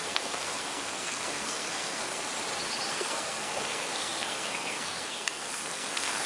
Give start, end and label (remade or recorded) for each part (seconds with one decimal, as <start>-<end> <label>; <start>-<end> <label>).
0.0-2.3 remade; 2.3-2.9 recorded; 2.9-6.3 remade